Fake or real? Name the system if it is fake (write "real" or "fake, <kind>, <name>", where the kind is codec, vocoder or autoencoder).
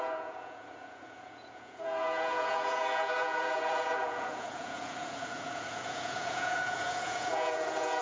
fake, vocoder, Vocos